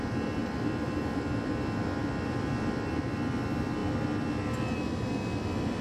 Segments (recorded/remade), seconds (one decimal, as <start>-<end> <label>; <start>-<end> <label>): 0.0-0.4 recorded; 0.4-1.0 remade; 1.0-2.0 recorded; 2.0-2.9 remade; 2.9-5.8 recorded